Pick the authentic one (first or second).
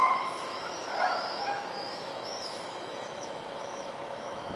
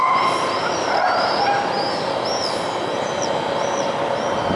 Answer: second